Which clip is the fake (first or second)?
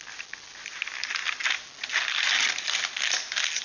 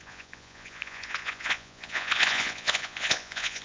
second